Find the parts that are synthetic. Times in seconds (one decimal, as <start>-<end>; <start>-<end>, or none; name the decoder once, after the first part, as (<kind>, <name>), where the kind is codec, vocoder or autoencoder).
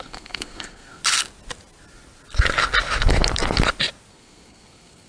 0.0-1.0 (codec, SNAC); 4.1-5.1